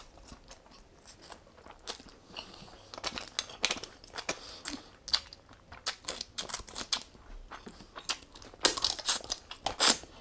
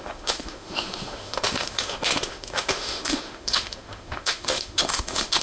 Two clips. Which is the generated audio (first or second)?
second